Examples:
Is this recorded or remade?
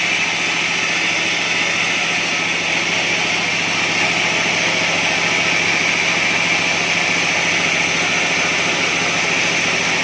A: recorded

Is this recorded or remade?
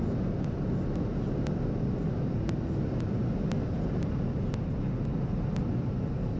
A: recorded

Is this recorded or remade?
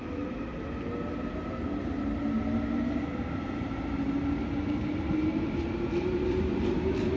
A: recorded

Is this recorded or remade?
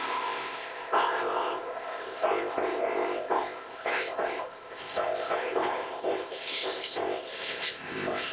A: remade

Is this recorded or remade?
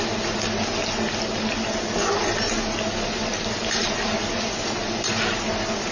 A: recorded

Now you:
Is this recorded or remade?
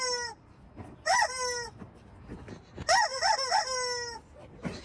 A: recorded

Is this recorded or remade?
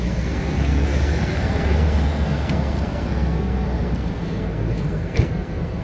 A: remade